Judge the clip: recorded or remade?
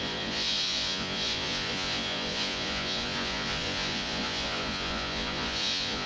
remade